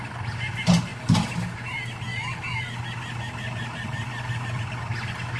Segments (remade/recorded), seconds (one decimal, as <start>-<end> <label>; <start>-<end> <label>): 0.0-2.1 recorded; 2.1-5.4 remade